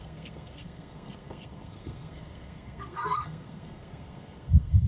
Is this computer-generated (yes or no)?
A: yes